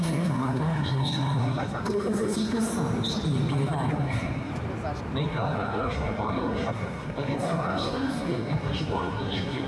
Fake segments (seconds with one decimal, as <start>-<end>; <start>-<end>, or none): 0.0-2.7; 3.9-4.5; 5.2-9.7